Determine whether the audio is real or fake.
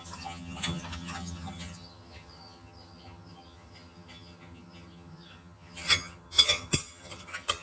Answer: fake